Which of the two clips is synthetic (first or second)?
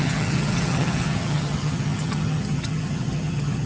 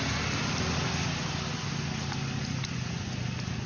first